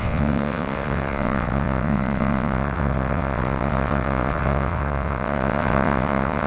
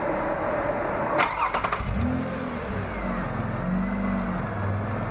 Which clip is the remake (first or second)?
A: first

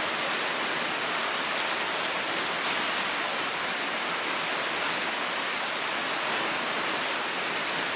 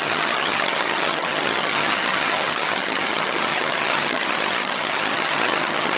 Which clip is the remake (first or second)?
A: second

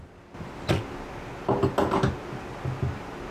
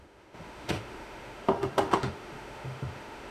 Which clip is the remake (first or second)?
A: second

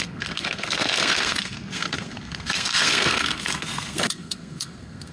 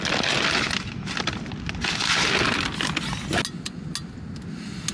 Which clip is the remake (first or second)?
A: first